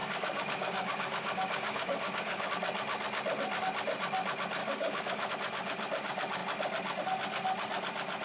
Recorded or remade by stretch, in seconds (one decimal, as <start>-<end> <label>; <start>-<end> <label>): 0.0-2.5 remade; 2.5-4.6 recorded; 4.6-5.3 remade; 5.3-8.2 recorded

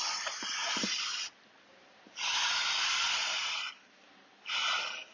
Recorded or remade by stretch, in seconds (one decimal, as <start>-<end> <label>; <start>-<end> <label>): 0.0-5.1 recorded

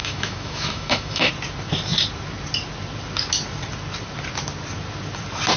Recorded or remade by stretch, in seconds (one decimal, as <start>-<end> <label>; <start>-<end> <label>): 0.0-1.3 remade; 1.3-5.6 recorded

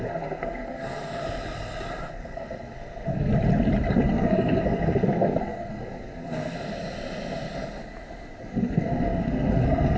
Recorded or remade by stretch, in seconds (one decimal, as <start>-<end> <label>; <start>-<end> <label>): 0.0-1.2 remade; 1.2-2.0 recorded; 2.0-3.3 remade; 3.3-4.1 recorded; 4.1-6.7 remade; 6.7-8.4 recorded; 8.4-10.0 remade